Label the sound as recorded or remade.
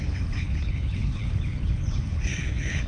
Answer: remade